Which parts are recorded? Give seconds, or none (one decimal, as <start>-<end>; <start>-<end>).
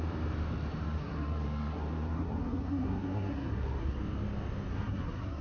0.0-0.8; 4.0-4.7